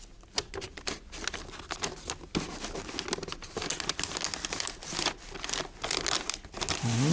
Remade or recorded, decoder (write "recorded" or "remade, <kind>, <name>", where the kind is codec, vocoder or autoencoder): recorded